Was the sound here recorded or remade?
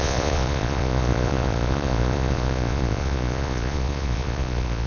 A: remade